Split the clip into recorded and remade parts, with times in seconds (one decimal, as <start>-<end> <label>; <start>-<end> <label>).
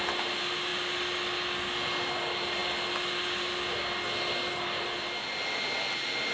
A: 0.0-6.3 recorded